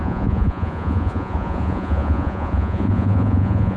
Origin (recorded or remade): remade